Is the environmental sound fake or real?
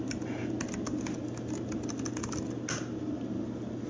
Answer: real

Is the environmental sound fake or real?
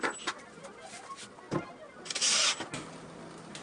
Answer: real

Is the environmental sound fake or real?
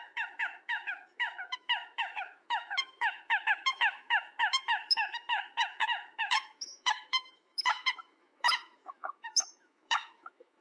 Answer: fake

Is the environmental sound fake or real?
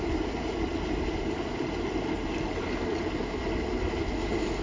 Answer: real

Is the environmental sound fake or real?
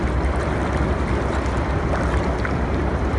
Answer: real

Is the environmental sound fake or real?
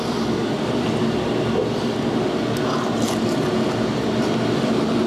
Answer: real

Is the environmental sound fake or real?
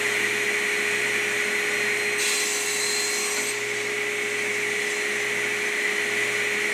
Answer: real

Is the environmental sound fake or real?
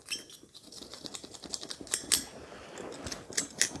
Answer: real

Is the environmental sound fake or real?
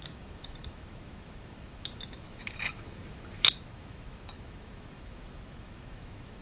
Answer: fake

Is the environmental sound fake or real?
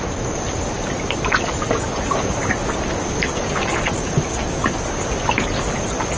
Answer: real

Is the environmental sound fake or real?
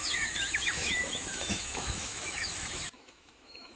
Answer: fake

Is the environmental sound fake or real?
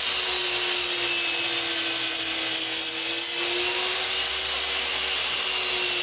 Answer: real